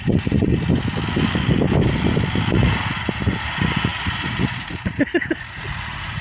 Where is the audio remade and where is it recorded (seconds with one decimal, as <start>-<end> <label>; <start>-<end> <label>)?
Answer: 0.0-0.5 remade; 0.5-2.5 recorded; 2.5-6.2 remade